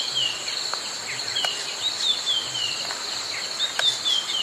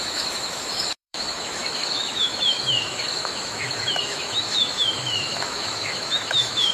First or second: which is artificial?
second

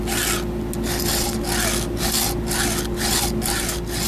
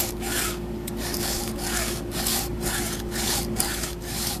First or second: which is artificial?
second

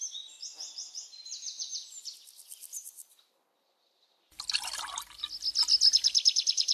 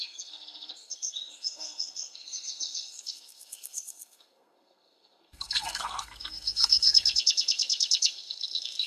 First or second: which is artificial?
second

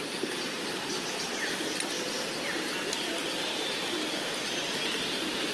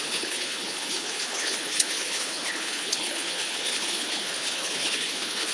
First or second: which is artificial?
second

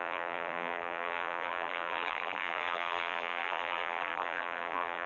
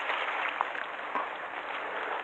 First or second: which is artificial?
first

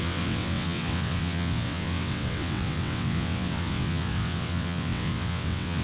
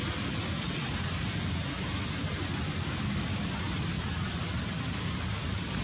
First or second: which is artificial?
first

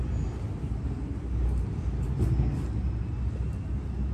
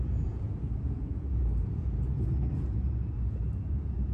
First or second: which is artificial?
second